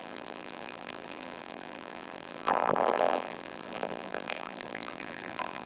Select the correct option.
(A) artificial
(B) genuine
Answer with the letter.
A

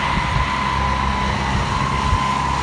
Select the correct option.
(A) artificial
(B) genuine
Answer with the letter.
B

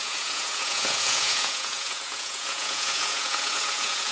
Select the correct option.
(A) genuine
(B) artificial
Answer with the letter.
B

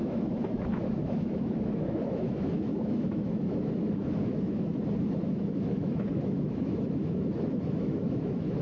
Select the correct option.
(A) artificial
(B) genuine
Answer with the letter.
A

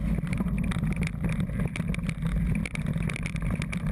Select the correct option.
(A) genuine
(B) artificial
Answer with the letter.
A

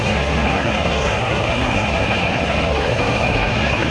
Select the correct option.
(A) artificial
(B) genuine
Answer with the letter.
A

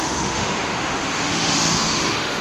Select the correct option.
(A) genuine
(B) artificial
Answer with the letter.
B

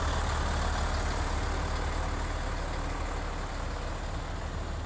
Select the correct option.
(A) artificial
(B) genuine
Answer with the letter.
B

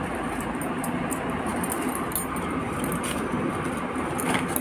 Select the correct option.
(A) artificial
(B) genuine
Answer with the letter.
B